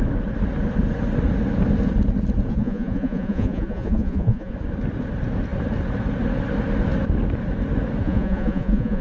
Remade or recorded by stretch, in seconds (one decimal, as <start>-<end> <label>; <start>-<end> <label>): 0.0-2.5 recorded; 2.5-4.5 remade; 4.5-8.0 recorded; 8.0-9.0 remade